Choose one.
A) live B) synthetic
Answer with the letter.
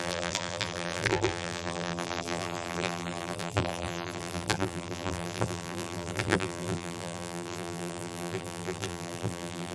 B